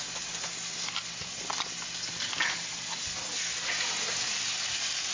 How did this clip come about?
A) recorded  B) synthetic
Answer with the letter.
A